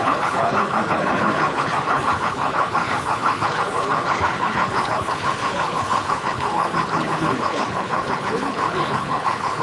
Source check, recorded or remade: remade